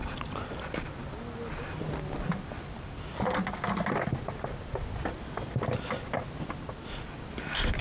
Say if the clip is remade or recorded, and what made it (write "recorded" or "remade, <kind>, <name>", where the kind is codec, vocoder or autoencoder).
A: recorded